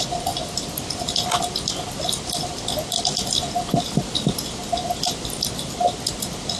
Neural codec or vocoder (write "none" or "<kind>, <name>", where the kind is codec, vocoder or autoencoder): none